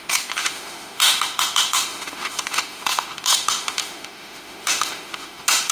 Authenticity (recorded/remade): remade